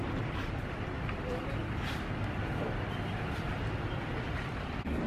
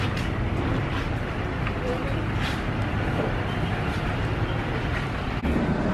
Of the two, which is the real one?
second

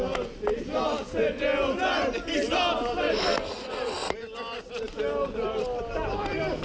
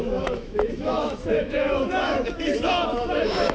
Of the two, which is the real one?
first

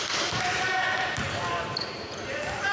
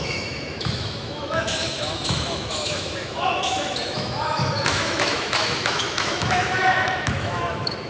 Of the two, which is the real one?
first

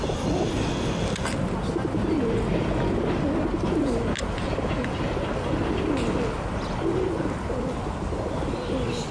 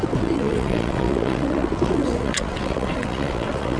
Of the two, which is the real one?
first